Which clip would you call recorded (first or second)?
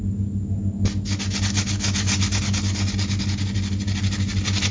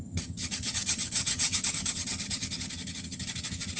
first